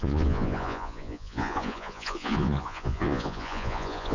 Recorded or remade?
remade